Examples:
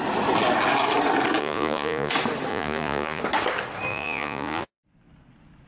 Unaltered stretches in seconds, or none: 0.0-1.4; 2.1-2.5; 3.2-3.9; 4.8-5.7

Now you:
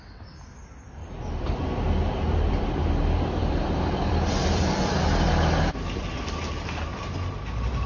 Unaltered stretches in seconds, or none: 0.0-1.0; 5.3-7.9